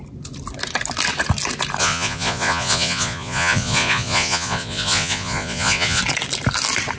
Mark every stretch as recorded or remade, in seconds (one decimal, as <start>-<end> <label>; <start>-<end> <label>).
0.0-1.8 recorded; 1.8-6.0 remade; 6.0-7.0 recorded